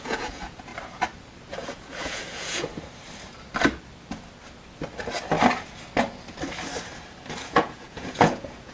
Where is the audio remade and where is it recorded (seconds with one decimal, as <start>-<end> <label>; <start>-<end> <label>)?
0.0-0.7 remade; 0.7-1.5 recorded; 1.5-2.7 remade; 2.7-7.3 recorded; 7.3-8.7 remade